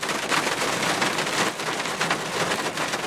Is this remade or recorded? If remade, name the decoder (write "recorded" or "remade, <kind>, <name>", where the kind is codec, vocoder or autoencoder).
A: recorded